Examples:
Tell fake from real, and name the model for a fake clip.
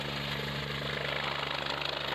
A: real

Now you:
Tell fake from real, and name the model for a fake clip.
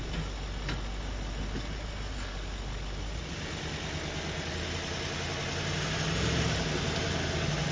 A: real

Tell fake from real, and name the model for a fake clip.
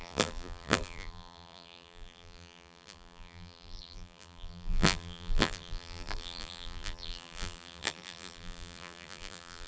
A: fake, vocoder, BigVGAN v2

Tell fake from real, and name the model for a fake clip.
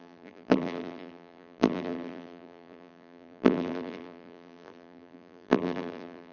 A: fake, vocoder, BigVGAN v2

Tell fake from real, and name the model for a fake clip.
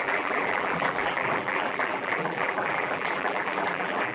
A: fake, vocoder, BigVGAN v2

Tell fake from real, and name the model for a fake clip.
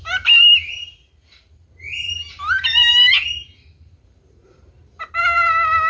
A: fake, vocoder, BigVGAN v2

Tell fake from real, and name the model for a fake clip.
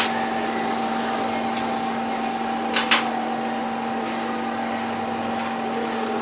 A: real